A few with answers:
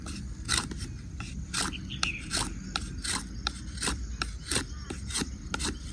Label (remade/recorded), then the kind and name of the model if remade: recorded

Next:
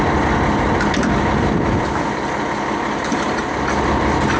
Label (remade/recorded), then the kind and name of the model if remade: recorded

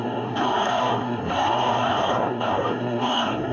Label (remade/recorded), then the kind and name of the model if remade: remade, codec, SNAC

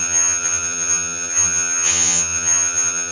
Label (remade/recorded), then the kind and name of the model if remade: remade, vocoder, HiFi-GAN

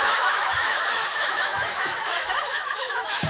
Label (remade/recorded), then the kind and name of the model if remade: remade, autoencoder, DAC-VAE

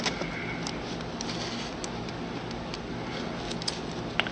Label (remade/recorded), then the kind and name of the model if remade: recorded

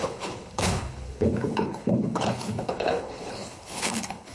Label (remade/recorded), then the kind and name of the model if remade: remade, codec, HILCodec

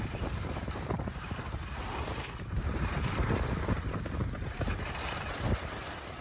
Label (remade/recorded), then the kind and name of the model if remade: remade, vocoder, BigVGAN v2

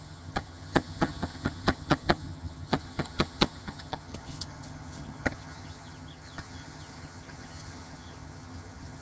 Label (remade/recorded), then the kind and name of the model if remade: remade, vocoder, HiFi-GAN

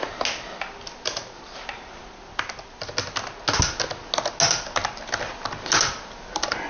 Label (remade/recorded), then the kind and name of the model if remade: recorded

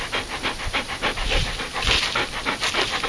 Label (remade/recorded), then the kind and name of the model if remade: recorded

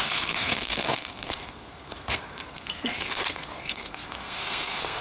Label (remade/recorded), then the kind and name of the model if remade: remade, codec, SNAC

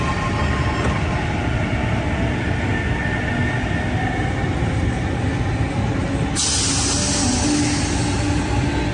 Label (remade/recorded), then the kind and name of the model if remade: recorded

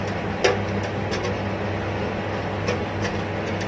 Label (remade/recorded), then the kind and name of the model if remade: recorded